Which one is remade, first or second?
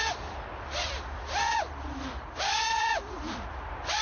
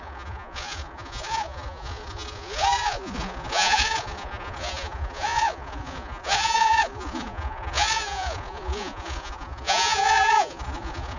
second